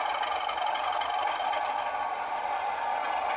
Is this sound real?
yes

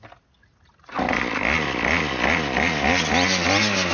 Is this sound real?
yes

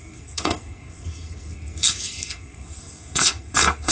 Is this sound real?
no